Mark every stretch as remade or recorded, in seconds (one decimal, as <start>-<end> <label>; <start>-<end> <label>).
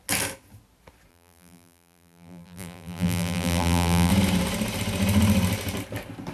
0.0-1.1 recorded; 1.1-4.1 remade; 4.1-6.3 recorded